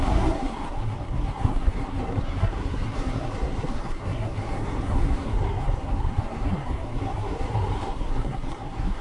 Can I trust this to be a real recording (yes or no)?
no